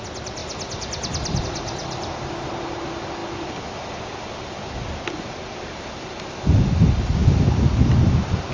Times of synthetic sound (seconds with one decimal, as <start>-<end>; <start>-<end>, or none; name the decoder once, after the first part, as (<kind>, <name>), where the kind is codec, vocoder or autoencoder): 1.8-2.5 (vocoder, BigVGAN v2)